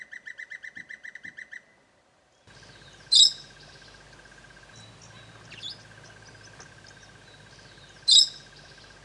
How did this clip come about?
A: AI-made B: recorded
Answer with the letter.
B